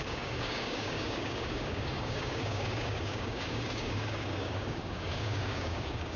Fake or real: fake